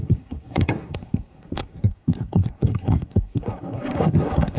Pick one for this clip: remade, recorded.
remade